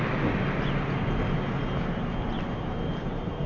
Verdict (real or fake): real